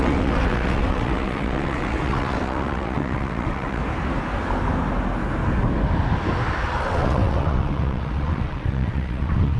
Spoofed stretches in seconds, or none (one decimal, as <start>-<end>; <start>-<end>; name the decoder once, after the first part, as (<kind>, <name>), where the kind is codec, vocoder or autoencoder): 0.0-3.8 (vocoder, WaveNeXt); 6.8-9.6